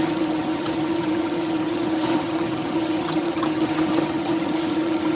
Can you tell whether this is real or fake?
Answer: fake